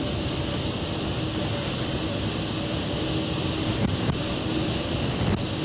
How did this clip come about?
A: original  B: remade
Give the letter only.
A